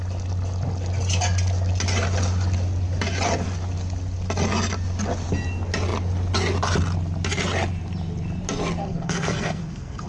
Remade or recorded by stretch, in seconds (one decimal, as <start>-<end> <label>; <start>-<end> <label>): 0.0-8.8 recorded; 8.8-10.1 remade